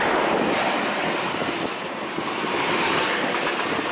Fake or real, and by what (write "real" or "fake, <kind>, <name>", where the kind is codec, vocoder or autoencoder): real